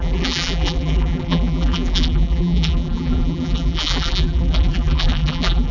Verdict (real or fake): fake